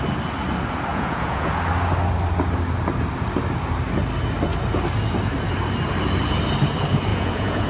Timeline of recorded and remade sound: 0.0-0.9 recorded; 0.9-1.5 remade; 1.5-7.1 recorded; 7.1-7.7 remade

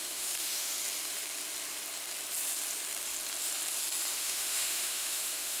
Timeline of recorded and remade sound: 0.0-0.7 remade; 0.7-4.1 recorded; 4.1-5.6 remade